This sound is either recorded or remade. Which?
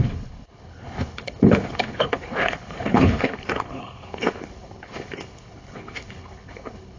remade